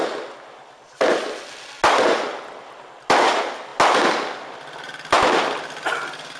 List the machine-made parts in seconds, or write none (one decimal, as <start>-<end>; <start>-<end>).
none

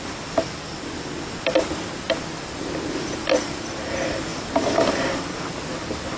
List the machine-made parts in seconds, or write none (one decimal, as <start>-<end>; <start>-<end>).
none

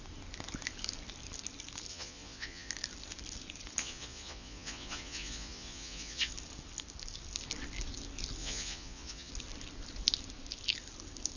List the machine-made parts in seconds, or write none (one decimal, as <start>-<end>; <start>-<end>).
1.9-2.7; 3.8-6.3; 8.4-9.3

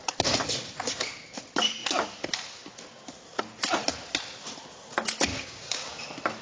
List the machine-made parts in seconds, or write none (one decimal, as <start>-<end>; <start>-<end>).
5.3-6.0

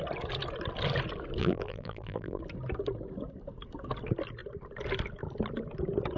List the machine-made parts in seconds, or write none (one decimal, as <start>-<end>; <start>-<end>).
1.4-2.4

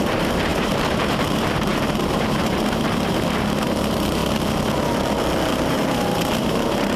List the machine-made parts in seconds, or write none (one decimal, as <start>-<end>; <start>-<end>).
0.0-4.2; 5.5-7.0

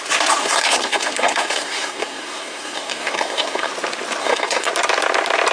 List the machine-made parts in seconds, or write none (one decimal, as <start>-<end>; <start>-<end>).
0.4-3.7; 4.2-4.7

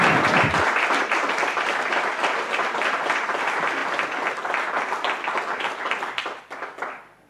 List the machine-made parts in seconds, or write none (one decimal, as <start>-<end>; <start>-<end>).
none